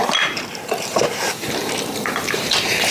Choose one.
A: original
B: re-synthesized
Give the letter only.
B